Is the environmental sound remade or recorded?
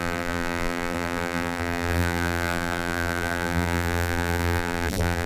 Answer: remade